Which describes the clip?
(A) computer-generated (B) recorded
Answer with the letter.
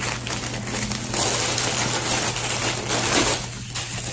B